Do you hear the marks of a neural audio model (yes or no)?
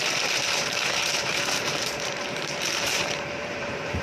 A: yes